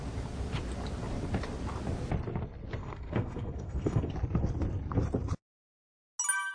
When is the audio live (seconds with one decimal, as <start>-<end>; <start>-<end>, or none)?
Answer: 0.0-2.8; 4.1-6.5